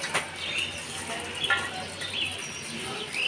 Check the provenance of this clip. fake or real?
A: real